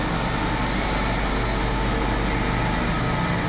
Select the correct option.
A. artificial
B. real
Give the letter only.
B